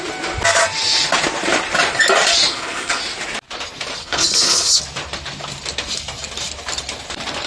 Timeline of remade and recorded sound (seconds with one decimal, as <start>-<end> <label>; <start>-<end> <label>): 0.0-2.5 recorded; 2.5-3.0 remade; 3.0-4.0 recorded; 4.0-4.8 remade; 4.8-7.5 recorded